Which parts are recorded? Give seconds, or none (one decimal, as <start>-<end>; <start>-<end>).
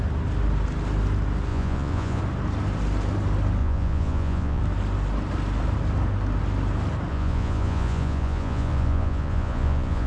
0.0-1.5; 2.2-3.6; 4.6-7.1